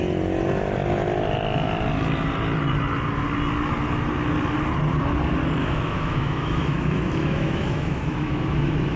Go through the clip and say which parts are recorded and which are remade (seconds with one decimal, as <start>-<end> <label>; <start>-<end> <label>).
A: 0.0-5.6 recorded; 5.6-9.0 remade